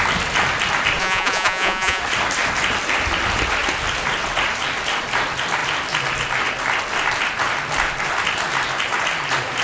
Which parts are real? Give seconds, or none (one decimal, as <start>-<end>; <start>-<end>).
0.0-1.0; 2.0-9.6

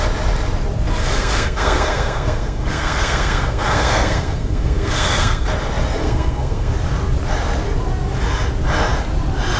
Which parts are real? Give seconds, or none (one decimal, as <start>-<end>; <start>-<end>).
0.0-1.0; 5.5-6.0; 6.7-9.6

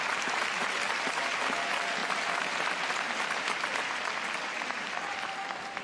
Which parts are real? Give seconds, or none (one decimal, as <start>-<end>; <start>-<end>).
0.0-5.8

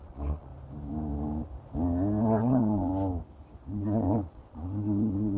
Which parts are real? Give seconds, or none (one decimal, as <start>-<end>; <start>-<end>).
0.5-2.4; 2.9-3.7

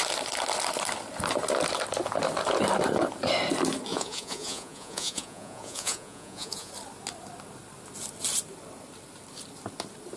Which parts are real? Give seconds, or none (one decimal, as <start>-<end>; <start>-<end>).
0.0-3.9; 6.7-10.2